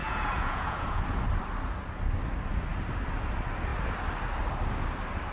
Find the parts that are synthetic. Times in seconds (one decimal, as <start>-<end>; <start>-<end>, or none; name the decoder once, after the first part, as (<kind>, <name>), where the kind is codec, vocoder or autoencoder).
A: 0.0-1.0 (vocoder, Vocos)